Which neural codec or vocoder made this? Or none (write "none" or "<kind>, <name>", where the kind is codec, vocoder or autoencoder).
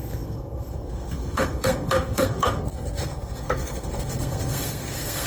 codec, SNAC